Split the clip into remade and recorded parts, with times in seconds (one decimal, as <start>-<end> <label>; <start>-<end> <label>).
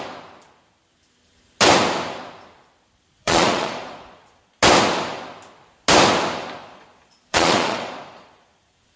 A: 0.0-3.2 recorded; 3.2-4.6 remade; 4.6-6.6 recorded; 6.6-9.0 remade